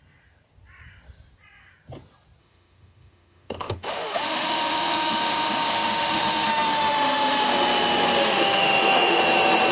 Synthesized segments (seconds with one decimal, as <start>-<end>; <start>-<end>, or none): 2.4-7.5; 8.2-9.2